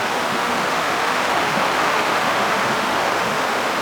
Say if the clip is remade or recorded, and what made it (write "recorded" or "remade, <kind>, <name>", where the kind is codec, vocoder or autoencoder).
remade, autoencoder, DAC-VAE